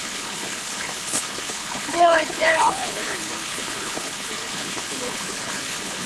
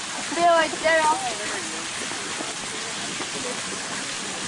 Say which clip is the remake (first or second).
first